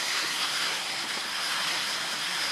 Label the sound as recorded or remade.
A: remade